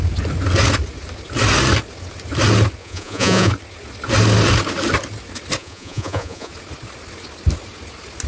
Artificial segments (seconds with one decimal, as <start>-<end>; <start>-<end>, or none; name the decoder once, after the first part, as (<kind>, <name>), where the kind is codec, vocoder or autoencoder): 2.8-3.5 (vocoder, Vocos); 5.6-6.5

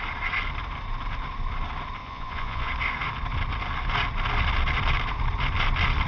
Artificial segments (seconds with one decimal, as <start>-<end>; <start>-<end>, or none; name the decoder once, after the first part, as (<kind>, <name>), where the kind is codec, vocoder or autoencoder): 2.0-2.7 (vocoder, Vocos)

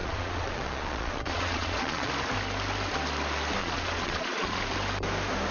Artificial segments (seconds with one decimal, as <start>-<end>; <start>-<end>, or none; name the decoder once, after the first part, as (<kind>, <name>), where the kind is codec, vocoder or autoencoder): 0.0-2.1 (vocoder, Vocos); 3.6-4.6

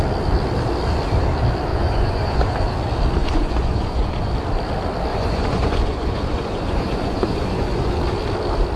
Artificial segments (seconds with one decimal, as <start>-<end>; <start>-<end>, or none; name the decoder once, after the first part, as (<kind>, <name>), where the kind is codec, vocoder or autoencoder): 1.7-2.5 (vocoder, Vocos); 3.2-4.3; 5.1-7.9